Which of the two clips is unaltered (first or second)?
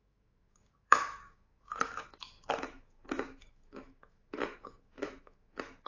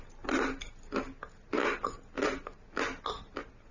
second